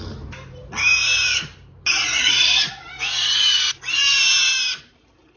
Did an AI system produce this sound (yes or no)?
no